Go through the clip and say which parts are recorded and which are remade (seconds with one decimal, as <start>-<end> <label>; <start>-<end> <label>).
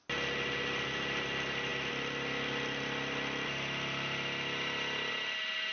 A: 0.0-5.7 recorded